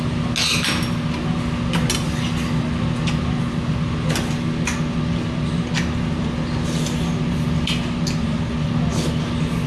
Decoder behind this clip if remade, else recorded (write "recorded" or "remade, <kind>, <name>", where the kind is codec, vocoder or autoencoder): recorded